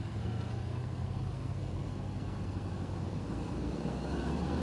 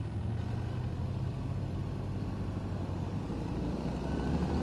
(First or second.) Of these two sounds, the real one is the second